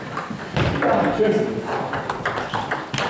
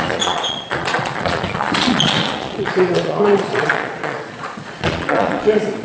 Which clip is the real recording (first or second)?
first